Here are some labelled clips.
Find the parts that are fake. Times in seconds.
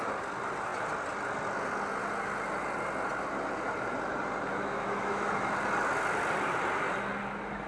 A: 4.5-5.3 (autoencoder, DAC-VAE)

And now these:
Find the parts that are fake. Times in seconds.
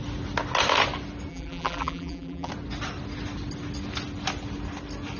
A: 1.3-2.5 (vocoder, BigVGAN v2)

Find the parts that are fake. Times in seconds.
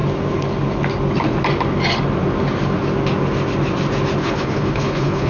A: 4.2-5.3 (codec, HILCodec)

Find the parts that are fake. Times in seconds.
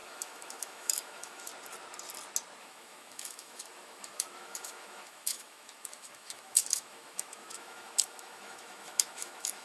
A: 0.0-1.5 (autoencoder, DAC-VAE); 2.6-9.6